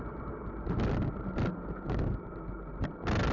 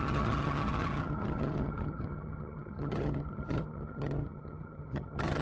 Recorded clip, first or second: first